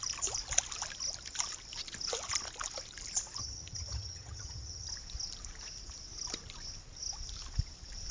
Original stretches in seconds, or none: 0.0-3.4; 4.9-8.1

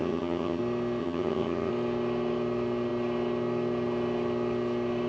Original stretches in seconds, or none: 0.6-1.0; 1.7-5.1